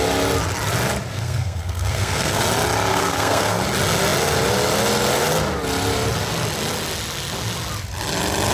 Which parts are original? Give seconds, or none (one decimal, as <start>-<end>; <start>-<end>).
0.0-1.1; 2.4-2.9; 3.6-8.5